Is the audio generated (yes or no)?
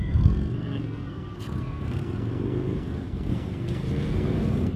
yes